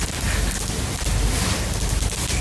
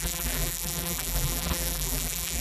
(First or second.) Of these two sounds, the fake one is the second